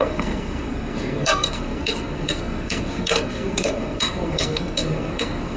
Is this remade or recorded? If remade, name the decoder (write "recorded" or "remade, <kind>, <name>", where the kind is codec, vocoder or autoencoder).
remade, codec, SNAC